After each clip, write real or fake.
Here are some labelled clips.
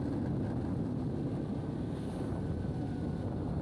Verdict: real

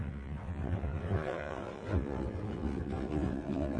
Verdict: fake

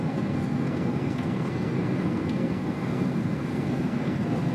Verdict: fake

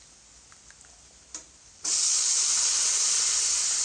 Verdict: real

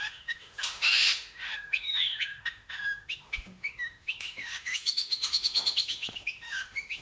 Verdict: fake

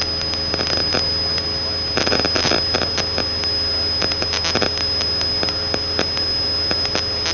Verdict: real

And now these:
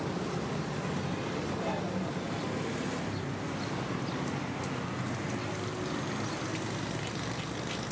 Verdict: real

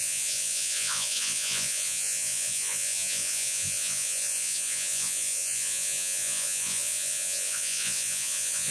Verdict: fake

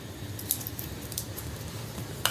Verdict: real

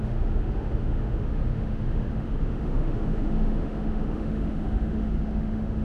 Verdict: fake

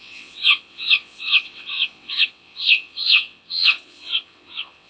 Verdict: fake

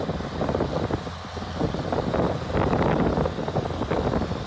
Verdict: real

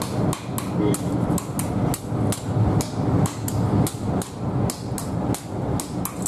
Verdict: real